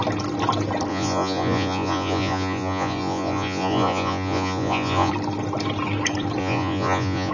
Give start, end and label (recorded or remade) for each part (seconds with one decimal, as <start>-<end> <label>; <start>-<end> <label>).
0.0-0.9 recorded; 0.9-5.1 remade; 5.1-6.4 recorded; 6.4-7.3 remade